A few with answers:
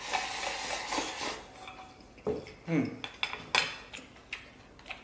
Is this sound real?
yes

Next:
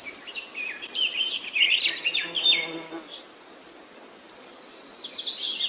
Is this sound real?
yes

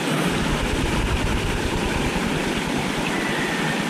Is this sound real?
yes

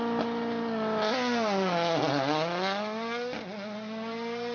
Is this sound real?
yes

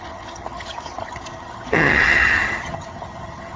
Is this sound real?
no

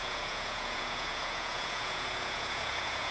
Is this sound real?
no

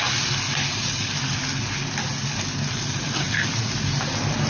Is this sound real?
yes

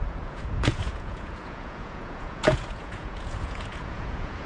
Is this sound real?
no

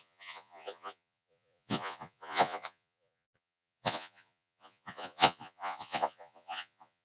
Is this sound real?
no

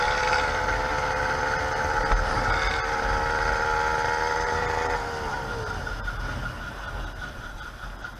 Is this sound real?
yes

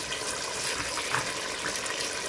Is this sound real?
yes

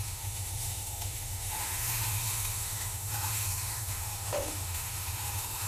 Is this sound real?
no